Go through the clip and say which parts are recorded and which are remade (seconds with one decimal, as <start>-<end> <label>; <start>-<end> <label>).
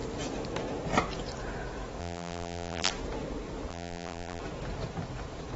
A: 0.0-2.0 recorded; 2.0-2.9 remade; 2.9-3.7 recorded; 3.7-4.4 remade; 4.4-5.6 recorded